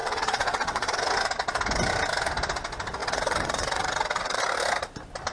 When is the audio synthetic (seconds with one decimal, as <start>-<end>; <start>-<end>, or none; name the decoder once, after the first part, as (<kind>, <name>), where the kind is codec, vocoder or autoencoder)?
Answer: 0.0-1.1 (vocoder, WaveNeXt); 3.0-4.4